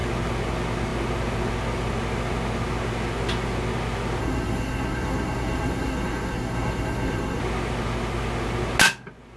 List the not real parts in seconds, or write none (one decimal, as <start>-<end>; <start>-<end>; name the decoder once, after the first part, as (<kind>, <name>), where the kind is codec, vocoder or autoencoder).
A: 4.2-7.4 (codec, SNAC)